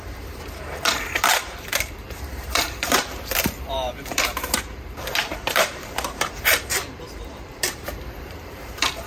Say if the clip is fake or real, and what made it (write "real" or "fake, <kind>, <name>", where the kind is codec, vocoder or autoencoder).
fake, vocoder, BigVGAN v2